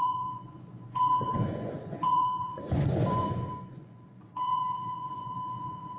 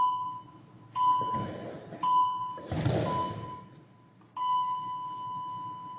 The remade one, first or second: first